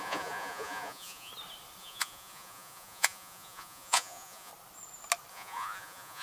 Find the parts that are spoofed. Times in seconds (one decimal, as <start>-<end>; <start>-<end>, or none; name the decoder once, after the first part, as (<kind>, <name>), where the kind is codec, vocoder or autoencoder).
0.0-1.3 (vocoder, Vocos); 1.8-4.5; 5.3-6.2